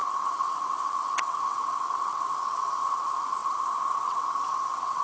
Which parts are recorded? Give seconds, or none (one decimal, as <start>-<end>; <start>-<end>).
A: 3.0-3.4